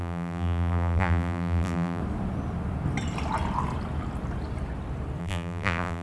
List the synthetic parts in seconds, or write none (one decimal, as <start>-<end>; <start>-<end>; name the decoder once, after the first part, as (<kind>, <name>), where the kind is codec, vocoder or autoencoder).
0.0-2.0 (vocoder, BigVGAN v2); 5.2-6.0